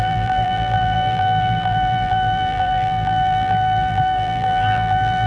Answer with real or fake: fake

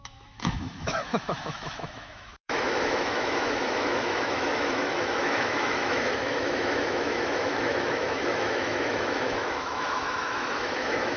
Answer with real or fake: fake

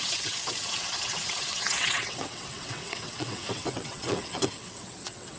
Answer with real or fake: fake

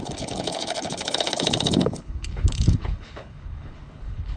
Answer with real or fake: fake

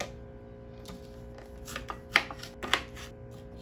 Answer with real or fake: real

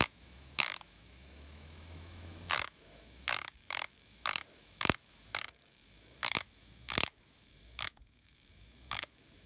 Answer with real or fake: fake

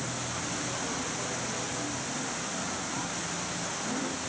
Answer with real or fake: real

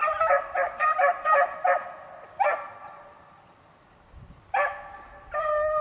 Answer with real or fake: real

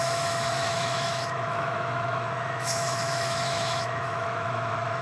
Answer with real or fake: fake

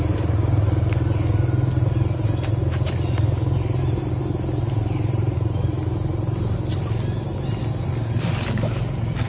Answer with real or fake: real